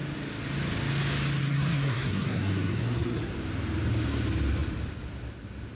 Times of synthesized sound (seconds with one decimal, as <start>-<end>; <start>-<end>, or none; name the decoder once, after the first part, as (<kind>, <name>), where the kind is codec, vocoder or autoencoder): 1.4-3.3 (codec, SNAC)